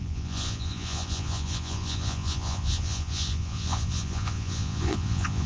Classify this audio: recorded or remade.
remade